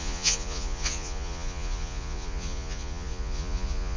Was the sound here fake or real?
fake